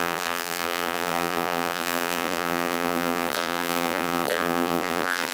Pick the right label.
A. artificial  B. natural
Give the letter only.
A